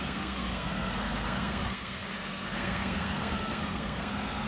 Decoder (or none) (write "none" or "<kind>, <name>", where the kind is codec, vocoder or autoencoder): codec, SNAC